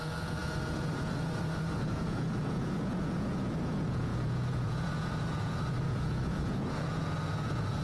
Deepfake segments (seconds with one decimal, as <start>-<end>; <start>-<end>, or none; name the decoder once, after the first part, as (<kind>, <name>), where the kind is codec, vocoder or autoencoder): 0.0-7.8 (vocoder, Vocos)